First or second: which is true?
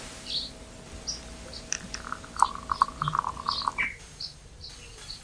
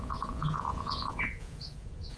first